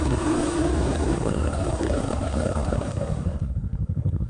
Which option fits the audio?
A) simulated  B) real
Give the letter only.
A